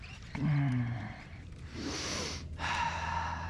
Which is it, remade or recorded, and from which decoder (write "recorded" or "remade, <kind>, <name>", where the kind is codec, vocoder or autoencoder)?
remade, vocoder, BigVGAN v2